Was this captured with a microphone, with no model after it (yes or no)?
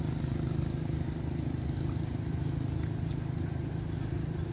yes